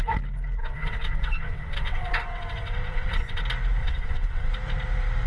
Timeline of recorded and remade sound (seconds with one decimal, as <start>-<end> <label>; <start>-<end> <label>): 0.0-0.6 recorded; 0.6-3.4 remade; 3.4-3.8 recorded; 3.8-4.5 remade; 4.5-5.3 recorded